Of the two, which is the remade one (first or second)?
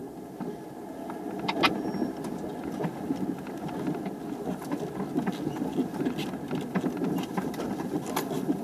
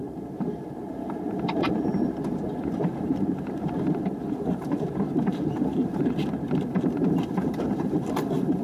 second